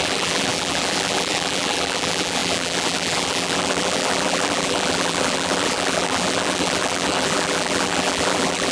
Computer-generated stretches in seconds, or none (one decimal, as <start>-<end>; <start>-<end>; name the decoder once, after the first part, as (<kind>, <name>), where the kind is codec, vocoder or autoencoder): 0.0-8.7 (vocoder, BigVGAN v2)